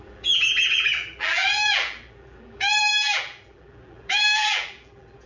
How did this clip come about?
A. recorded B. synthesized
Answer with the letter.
B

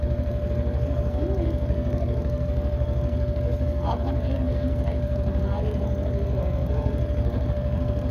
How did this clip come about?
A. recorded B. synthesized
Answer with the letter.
B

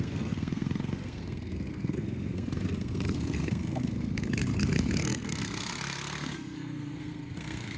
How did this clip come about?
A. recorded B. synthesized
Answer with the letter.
B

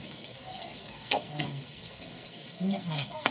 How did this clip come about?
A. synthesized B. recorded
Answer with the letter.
A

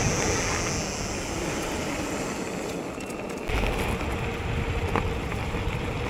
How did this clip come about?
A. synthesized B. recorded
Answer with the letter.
B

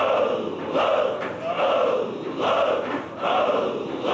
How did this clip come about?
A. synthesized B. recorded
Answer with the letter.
B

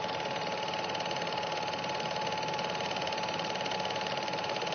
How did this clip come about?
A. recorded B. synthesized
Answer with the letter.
B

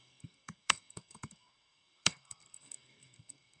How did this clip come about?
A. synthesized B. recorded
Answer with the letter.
A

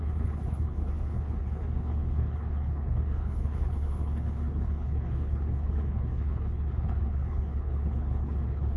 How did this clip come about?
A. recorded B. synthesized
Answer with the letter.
B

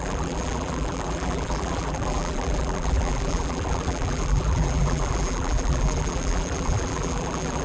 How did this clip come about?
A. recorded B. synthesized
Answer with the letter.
B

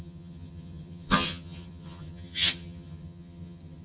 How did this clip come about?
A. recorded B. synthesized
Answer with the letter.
B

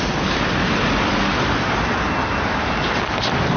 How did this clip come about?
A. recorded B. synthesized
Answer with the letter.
A